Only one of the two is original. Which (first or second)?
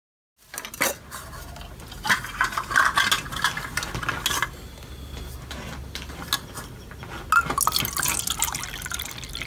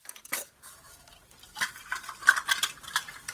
first